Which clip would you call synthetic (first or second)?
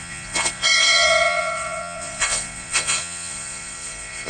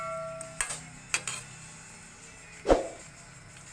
first